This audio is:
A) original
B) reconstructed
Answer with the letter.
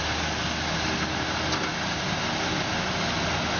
A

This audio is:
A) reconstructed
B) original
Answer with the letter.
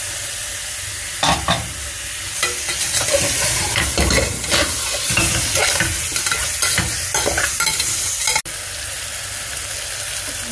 B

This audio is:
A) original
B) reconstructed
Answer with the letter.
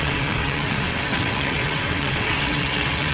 B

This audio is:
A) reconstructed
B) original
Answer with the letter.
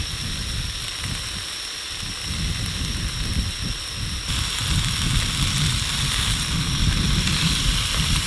B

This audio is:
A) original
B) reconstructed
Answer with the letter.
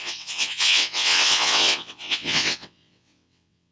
B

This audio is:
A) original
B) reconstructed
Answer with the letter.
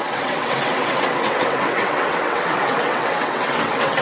B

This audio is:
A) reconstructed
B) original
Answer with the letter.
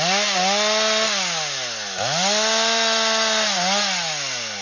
B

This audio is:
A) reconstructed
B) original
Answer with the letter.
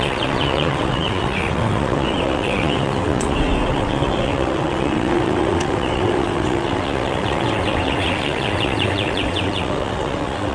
A